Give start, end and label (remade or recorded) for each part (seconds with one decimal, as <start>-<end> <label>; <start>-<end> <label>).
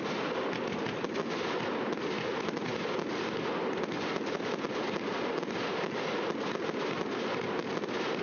0.0-8.2 recorded